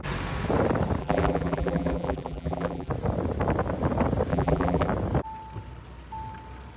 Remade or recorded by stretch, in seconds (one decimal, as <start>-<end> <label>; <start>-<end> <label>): 0.0-1.0 recorded; 1.0-2.9 remade; 2.9-4.3 recorded; 4.3-4.9 remade; 4.9-6.8 recorded